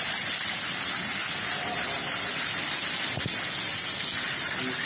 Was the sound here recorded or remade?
recorded